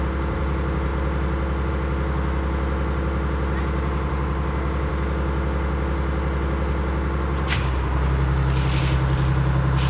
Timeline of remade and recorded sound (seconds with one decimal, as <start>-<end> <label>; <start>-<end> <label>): 0.0-9.9 recorded